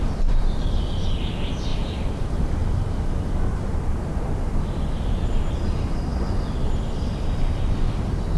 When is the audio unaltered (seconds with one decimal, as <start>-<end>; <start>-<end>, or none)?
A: 0.0-1.7; 2.5-8.4